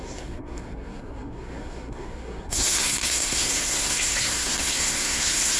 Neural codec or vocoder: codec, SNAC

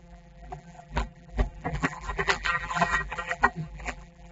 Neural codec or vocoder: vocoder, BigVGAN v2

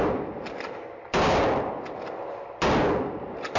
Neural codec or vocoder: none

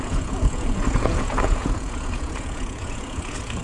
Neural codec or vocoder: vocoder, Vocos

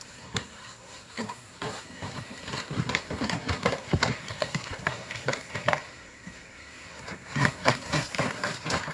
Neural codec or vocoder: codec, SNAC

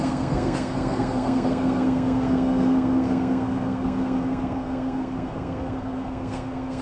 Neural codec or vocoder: codec, SNAC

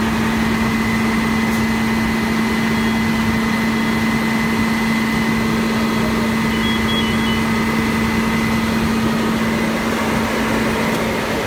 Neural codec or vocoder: none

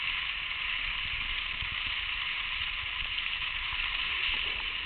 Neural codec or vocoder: vocoder, BigVGAN v2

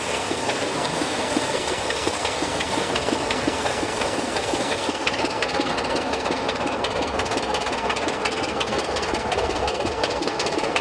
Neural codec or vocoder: codec, SNAC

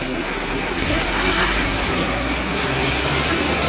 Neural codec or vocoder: codec, SNAC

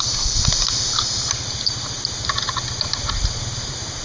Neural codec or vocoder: none